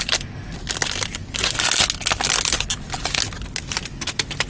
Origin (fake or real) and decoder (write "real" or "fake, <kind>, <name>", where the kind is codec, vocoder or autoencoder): real